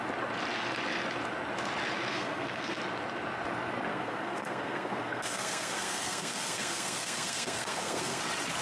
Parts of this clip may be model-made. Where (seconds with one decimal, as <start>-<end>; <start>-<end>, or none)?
2.1-2.8; 3.9-8.2